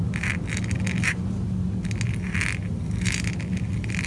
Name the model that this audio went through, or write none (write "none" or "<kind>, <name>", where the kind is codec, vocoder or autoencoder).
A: none